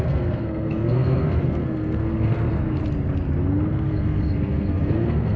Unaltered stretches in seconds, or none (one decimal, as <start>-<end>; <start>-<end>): 2.8-3.7